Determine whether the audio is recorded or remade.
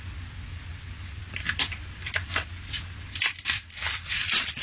recorded